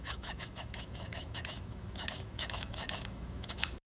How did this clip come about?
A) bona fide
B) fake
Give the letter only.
B